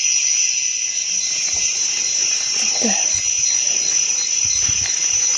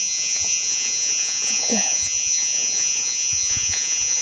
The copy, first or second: second